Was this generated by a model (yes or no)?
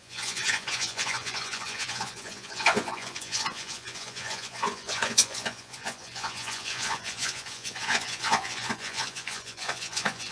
yes